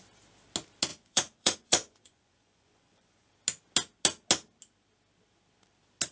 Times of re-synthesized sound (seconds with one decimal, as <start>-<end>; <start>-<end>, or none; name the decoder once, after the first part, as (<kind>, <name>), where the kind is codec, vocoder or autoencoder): 0.9-3.3 (vocoder, Vocos)